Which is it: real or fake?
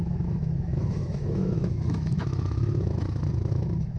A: fake